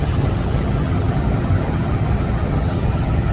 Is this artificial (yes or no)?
yes